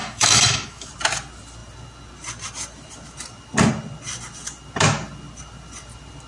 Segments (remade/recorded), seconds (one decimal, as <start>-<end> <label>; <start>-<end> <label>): 0.0-0.9 remade; 0.9-6.3 recorded